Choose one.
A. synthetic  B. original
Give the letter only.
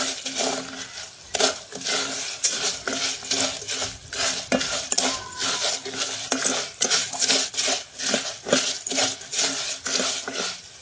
B